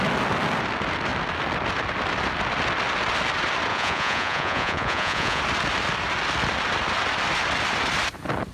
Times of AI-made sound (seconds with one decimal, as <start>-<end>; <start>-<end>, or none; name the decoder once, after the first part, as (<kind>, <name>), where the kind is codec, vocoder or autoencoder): 3.7-5.4 (vocoder, Vocos)